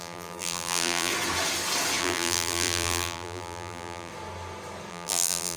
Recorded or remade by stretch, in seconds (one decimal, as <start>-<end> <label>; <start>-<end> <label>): 0.0-1.1 remade; 1.1-2.0 recorded; 2.0-4.1 remade; 4.1-4.9 recorded; 4.9-5.6 remade